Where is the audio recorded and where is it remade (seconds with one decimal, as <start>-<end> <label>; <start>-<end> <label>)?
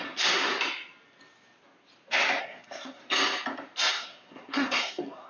0.0-0.5 remade; 0.5-2.4 recorded; 2.4-3.0 remade; 3.0-3.9 recorded; 3.9-5.3 remade